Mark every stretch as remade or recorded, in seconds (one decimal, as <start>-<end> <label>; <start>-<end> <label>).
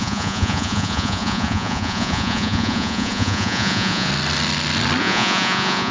0.0-4.1 remade; 4.1-5.0 recorded; 5.0-5.9 remade